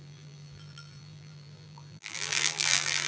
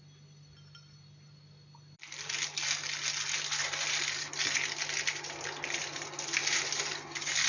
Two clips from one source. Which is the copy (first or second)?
first